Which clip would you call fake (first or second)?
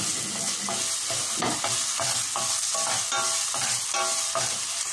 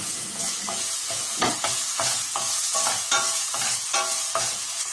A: second